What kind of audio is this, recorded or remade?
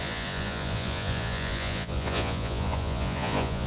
remade